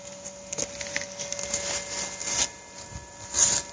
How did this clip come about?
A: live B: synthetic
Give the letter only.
A